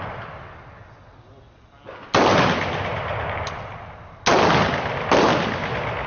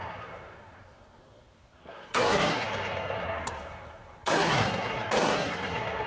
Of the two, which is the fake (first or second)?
second